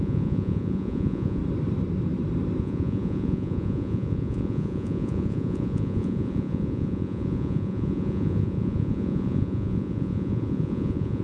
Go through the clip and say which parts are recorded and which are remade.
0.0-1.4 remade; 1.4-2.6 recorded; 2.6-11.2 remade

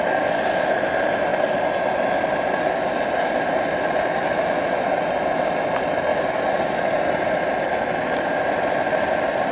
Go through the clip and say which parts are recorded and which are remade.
0.0-9.5 recorded